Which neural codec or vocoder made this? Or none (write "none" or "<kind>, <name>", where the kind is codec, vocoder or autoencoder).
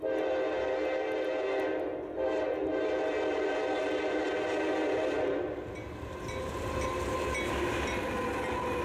none